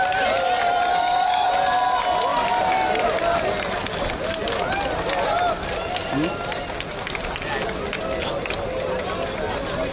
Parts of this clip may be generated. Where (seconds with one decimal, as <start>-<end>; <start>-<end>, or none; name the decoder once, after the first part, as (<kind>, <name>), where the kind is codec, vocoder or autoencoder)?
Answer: 0.9-1.5 (codec, DAC)